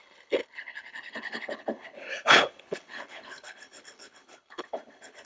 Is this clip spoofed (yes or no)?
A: yes